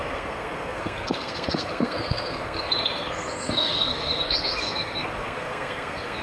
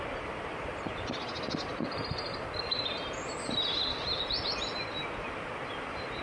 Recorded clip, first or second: second